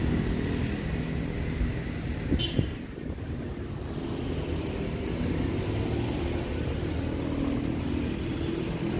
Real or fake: real